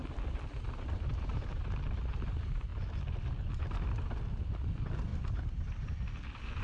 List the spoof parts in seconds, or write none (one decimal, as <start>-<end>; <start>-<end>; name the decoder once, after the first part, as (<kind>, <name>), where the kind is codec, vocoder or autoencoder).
none